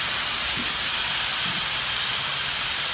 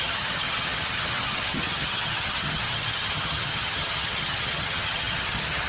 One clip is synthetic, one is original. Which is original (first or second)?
first